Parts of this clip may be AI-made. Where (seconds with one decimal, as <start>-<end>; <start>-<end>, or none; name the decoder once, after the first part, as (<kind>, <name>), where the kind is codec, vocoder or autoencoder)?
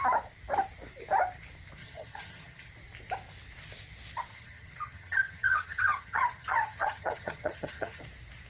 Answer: 1.8-2.7 (vocoder, HiFi-GAN); 4.3-8.0